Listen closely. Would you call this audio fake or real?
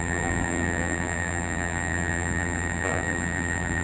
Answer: fake